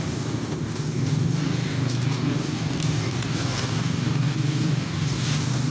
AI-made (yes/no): yes